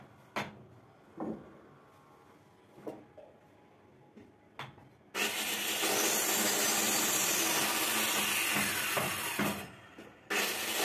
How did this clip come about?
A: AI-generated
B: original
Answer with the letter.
B